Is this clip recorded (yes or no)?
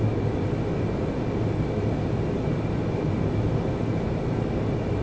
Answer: yes